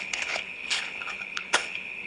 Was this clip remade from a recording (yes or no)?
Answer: yes